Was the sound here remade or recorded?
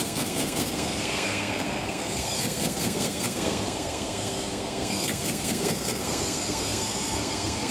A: remade